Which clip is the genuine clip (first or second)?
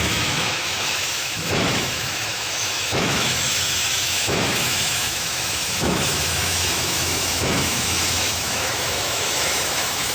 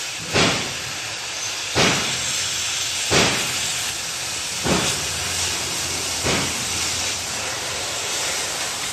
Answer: second